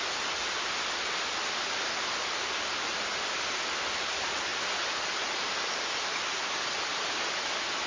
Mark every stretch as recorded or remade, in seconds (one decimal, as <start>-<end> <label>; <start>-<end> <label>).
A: 0.0-7.9 recorded